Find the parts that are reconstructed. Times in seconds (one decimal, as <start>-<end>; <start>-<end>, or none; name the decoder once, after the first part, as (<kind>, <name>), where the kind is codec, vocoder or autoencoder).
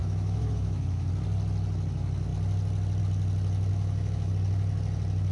0.0-1.1 (autoencoder, DAC-VAE); 3.7-4.3